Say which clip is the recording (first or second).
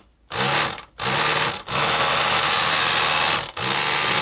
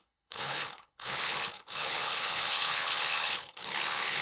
first